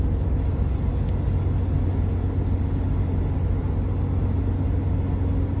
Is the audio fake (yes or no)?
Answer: no